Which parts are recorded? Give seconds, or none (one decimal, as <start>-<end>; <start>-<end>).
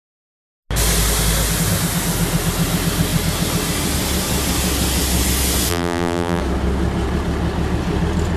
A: 0.0-5.7; 6.4-8.4